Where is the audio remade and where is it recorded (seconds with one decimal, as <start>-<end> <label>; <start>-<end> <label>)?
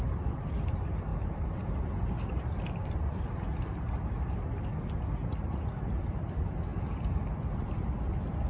0.0-1.1 recorded; 1.1-3.0 remade; 3.0-8.5 recorded